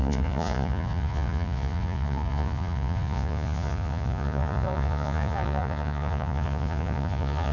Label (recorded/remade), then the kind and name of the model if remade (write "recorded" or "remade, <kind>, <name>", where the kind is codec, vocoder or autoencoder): remade, vocoder, Vocos